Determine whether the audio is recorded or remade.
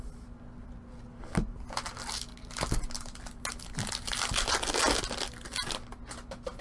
recorded